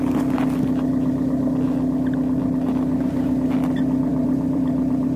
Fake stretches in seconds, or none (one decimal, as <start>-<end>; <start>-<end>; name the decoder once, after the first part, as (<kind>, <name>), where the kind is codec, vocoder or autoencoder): 4.1-5.2 (vocoder, BigVGAN v2)